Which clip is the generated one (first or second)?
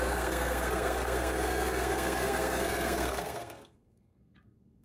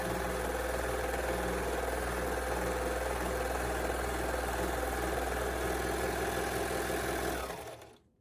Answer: first